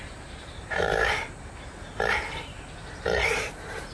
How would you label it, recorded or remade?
remade